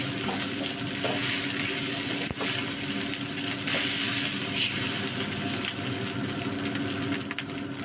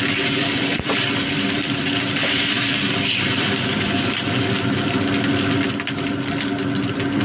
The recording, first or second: first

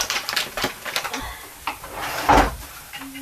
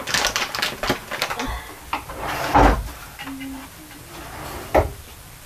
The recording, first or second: second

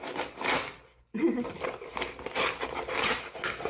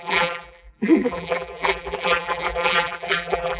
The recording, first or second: first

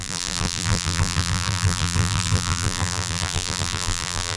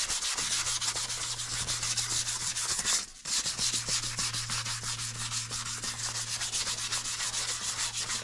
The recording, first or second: second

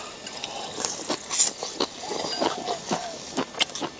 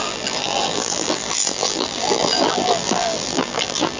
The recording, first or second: first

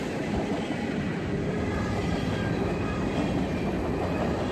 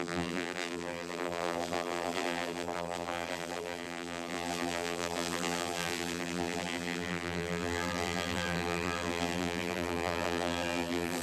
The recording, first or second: first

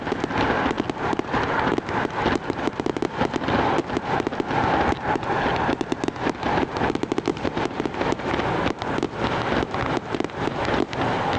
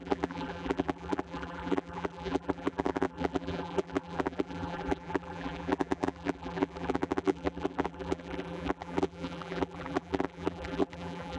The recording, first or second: first